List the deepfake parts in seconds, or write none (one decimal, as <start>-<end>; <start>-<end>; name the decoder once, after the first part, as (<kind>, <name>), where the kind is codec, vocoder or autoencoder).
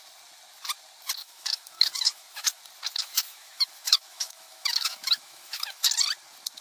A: 1.2-2.6 (autoencoder, DAC-VAE); 3.0-5.9